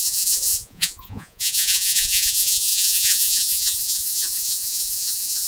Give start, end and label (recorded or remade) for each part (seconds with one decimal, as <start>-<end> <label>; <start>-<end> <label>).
0.0-5.5 remade